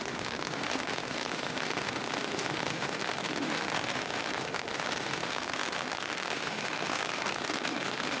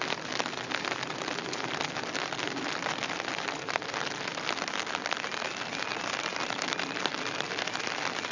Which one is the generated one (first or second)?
first